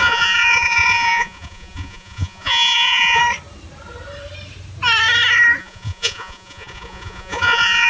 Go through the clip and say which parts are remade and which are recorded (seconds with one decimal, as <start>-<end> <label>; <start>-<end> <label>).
0.0-3.2 remade; 3.2-5.6 recorded; 5.6-7.9 remade